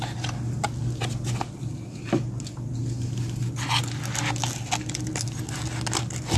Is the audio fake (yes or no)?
no